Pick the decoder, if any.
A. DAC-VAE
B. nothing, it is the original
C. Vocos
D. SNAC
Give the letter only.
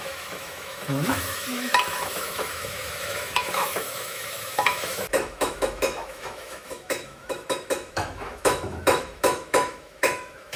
A